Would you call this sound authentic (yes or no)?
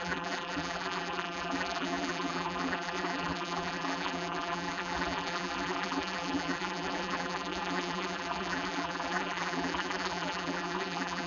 no